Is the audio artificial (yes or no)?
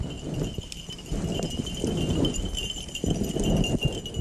no